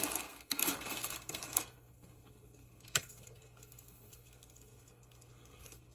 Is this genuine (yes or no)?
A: no